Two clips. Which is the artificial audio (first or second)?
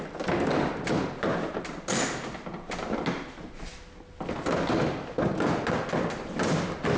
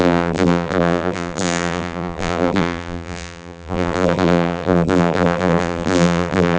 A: second